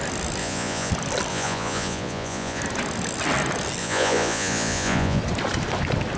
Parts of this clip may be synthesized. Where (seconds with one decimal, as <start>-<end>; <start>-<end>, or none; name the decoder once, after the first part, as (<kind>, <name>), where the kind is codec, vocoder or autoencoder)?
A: 0.4-0.9 (vocoder, Vocos); 1.3-2.6; 3.8-5.2